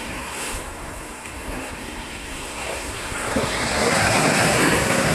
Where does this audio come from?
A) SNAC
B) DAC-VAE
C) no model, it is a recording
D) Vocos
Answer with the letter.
A